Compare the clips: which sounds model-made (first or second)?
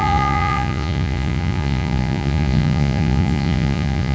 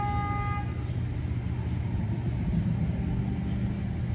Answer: first